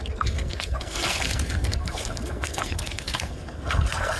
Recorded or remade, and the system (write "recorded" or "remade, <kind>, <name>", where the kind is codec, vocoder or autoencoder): remade, codec, SNAC